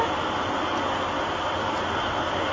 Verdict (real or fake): real